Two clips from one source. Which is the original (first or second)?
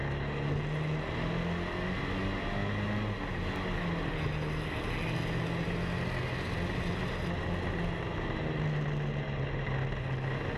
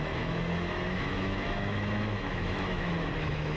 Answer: first